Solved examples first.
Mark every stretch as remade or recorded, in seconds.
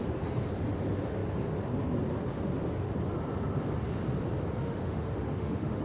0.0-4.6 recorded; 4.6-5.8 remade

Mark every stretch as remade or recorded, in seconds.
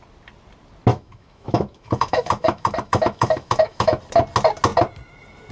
0.0-0.9 recorded; 0.9-4.0 remade; 4.0-5.5 recorded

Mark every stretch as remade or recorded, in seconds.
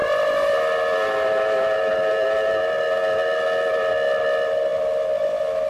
0.0-5.7 recorded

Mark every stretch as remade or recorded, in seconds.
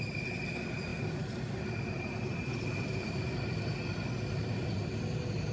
0.0-5.5 recorded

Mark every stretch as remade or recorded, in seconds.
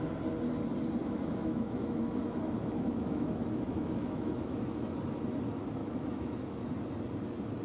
0.0-1.0 recorded; 1.0-4.9 remade; 4.9-5.8 recorded; 5.8-6.7 remade; 6.7-7.6 recorded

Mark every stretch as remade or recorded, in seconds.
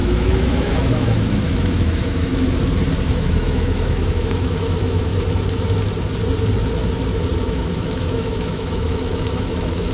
0.0-2.3 remade; 2.3-3.1 recorded; 3.1-5.1 remade; 5.1-7.4 recorded; 7.4-9.9 remade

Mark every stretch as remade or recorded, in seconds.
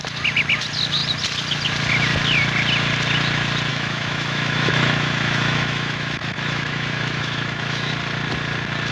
0.0-3.7 recorded; 3.7-7.9 remade; 7.9-8.9 recorded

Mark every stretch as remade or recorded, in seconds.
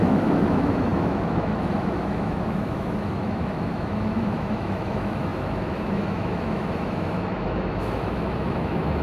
0.0-9.0 remade